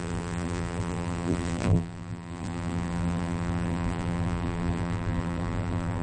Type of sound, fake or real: fake